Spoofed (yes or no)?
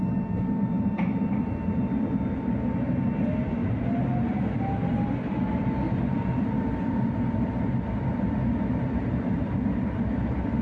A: no